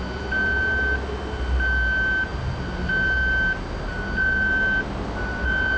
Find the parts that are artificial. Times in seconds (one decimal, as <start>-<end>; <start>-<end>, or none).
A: none